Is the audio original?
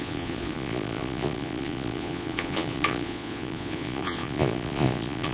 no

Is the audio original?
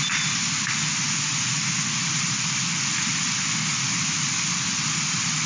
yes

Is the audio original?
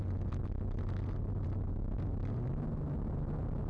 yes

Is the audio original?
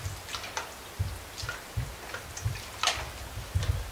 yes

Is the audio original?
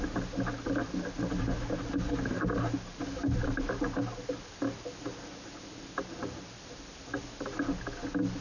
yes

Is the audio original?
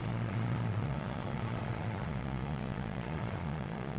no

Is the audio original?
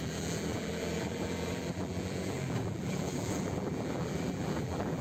no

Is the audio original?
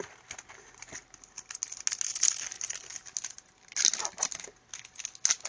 yes